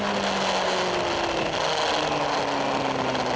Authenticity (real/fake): real